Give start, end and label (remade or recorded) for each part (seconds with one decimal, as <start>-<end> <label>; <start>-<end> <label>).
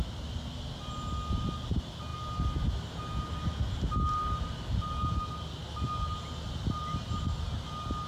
0.0-8.1 recorded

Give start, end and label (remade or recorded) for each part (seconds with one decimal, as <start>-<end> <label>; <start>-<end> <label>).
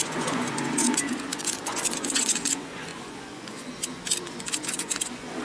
0.0-5.4 remade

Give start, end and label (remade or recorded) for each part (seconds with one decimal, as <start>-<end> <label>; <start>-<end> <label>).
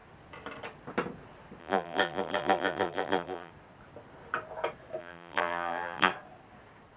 0.0-1.6 recorded; 1.6-3.5 remade; 3.5-5.0 recorded; 5.0-6.1 remade; 6.1-7.0 recorded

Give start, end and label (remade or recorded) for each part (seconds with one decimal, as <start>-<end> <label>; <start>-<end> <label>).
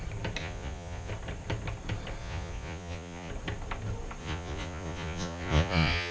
0.0-0.4 recorded; 0.4-1.1 remade; 1.1-2.2 recorded; 2.2-3.3 remade; 3.3-4.2 recorded; 4.2-6.1 remade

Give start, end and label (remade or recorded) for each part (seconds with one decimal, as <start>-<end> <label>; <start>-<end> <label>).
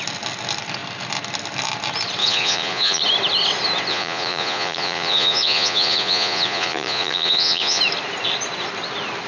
0.0-2.2 recorded; 2.2-3.0 remade; 3.0-3.9 recorded; 3.9-7.8 remade; 7.8-9.3 recorded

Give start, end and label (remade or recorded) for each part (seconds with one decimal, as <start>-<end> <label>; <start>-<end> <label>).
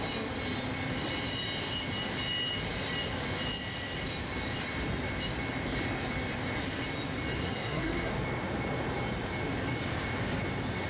0.0-7.4 recorded; 7.4-8.1 remade; 8.1-10.9 recorded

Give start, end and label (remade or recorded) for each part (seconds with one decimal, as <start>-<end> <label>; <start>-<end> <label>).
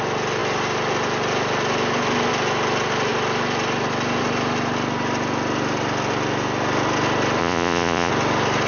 0.0-7.4 recorded; 7.4-8.1 remade; 8.1-8.7 recorded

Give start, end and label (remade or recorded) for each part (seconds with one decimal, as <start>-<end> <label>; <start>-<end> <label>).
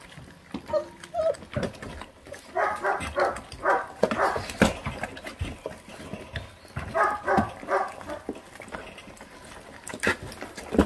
0.0-10.9 recorded